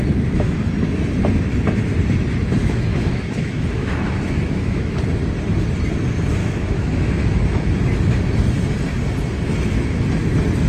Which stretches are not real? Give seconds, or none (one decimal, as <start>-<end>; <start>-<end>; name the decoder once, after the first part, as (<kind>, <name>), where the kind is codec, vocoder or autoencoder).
2.6-4.9 (autoencoder, DAC-VAE); 6.4-7.8